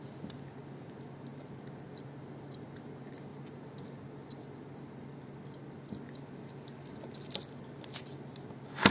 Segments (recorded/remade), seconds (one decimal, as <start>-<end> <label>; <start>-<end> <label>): 0.0-8.9 recorded